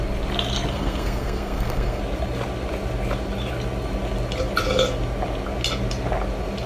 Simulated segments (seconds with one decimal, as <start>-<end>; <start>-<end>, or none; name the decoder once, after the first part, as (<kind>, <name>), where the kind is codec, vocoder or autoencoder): 0.7-2.0 (codec, SNAC)